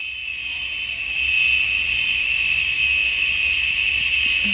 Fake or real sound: real